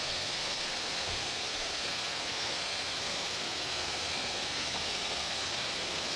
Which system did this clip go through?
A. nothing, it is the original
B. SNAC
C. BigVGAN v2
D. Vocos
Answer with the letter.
B